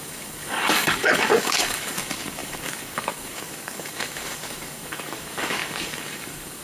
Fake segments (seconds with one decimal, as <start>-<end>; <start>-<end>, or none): 0.0-6.6